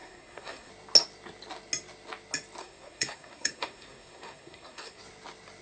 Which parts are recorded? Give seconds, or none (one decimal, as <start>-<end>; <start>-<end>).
0.7-2.6; 5.0-5.6